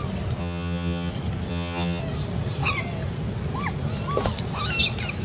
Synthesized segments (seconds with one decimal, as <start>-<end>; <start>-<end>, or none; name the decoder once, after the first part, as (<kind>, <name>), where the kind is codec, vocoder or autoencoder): 0.4-1.1 (vocoder, HiFi-GAN); 1.5-2.0